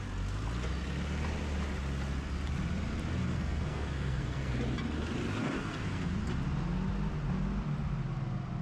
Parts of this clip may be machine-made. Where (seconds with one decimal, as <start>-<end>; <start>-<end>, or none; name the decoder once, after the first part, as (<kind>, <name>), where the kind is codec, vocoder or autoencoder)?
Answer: 3.2-4.5 (codec, SNAC); 5.4-6.1